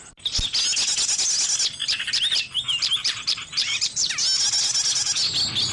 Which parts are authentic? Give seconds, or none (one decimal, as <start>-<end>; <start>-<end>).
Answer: 0.0-1.8; 4.1-5.7

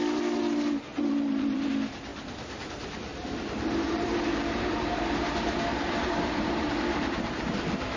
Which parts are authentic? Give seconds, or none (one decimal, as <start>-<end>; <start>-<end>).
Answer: 0.0-0.9; 1.7-2.1; 2.7-3.1

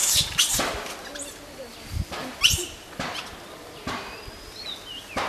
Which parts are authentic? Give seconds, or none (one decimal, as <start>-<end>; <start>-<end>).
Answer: 0.0-5.3